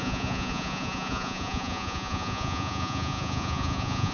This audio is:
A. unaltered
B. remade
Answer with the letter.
B